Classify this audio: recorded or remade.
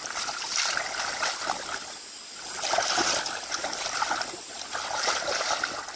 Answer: recorded